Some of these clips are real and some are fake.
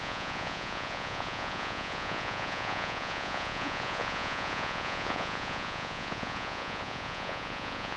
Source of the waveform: fake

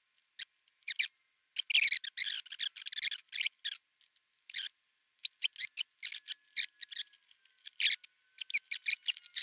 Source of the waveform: real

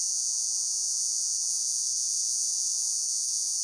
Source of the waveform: fake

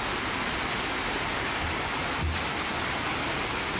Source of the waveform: real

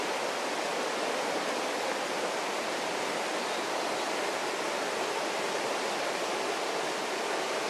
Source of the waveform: real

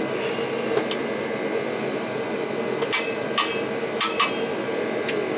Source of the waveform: real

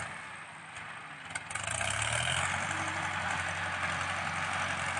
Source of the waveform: real